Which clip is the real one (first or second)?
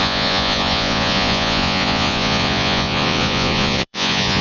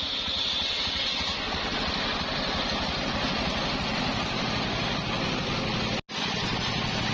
second